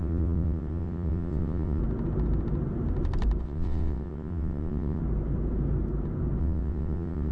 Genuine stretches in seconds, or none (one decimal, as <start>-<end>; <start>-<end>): 1.8-3.4; 5.0-6.4